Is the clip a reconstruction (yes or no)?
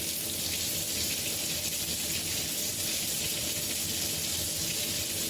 no